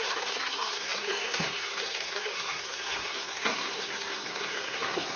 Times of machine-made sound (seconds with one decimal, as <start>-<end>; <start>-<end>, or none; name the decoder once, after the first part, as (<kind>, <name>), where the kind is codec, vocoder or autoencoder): 0.0-5.2 (codec, SNAC)